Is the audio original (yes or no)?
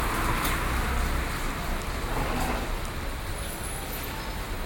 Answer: yes